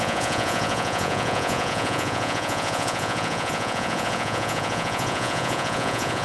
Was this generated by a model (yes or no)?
yes